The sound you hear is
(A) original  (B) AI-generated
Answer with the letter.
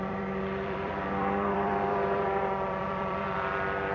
B